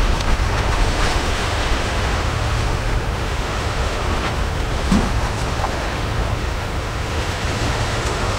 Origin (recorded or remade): remade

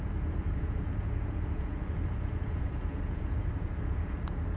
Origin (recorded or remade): remade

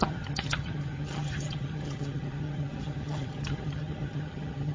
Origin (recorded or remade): remade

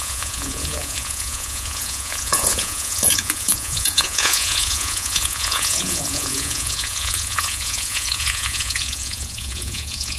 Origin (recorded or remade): remade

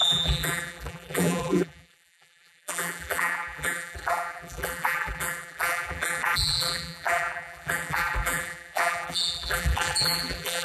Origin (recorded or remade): remade